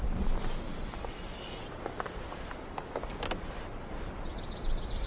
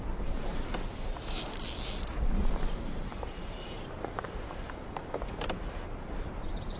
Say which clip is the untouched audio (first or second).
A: first